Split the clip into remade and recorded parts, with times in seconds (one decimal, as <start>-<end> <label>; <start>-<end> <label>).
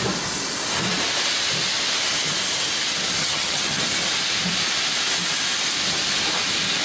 0.0-3.2 recorded; 3.2-3.8 remade; 3.8-6.8 recorded